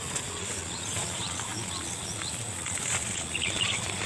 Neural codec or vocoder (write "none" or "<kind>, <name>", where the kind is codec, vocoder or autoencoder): vocoder, Vocos